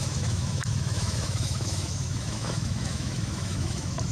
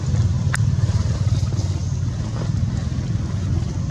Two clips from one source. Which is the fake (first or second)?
first